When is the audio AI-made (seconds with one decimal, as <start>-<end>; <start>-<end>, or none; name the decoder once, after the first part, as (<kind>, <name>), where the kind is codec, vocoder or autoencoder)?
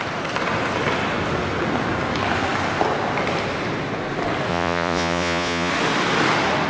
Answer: 4.5-5.7 (vocoder, Vocos)